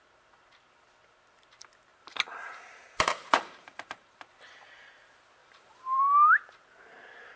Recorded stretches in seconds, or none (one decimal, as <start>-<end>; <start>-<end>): 0.0-1.9; 4.2-5.4; 6.0-7.4